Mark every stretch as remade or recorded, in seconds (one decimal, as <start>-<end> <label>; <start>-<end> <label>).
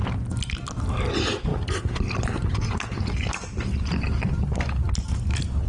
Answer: 0.0-1.5 recorded; 1.5-4.9 remade; 4.9-5.7 recorded